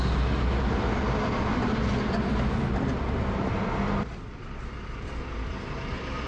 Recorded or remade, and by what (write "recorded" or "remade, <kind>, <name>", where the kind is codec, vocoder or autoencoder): recorded